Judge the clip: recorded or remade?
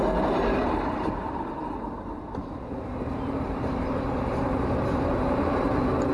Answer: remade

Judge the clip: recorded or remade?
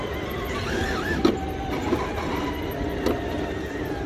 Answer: recorded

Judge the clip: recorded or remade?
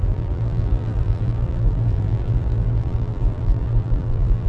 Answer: remade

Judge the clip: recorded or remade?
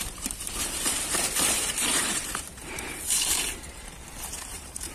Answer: remade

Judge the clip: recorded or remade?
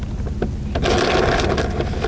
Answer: recorded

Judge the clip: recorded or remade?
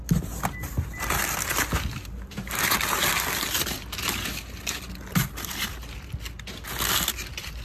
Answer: recorded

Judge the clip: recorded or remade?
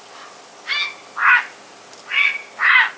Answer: recorded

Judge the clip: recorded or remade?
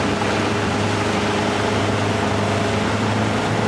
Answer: recorded